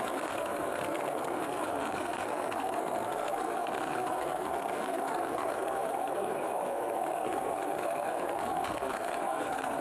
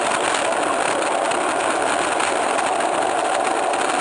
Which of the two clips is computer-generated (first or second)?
first